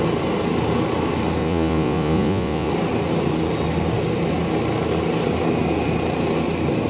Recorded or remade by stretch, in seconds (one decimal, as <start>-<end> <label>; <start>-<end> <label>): 0.0-1.4 recorded; 1.4-2.7 remade; 2.7-6.9 recorded